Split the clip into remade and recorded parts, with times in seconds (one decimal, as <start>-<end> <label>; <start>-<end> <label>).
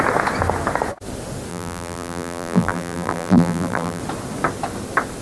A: 0.0-1.5 recorded; 1.5-4.0 remade; 4.0-5.2 recorded